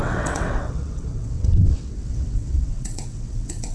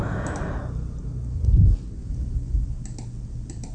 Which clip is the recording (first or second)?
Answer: second